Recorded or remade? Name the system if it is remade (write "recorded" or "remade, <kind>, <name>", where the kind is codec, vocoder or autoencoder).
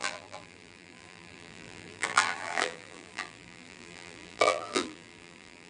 remade, vocoder, BigVGAN v2